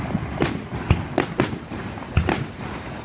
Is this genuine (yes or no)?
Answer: yes